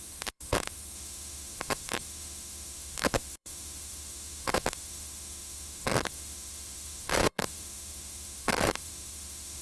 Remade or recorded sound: remade